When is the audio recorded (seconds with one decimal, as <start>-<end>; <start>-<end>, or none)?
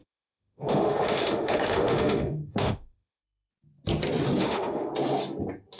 3.5-4.4; 4.9-5.8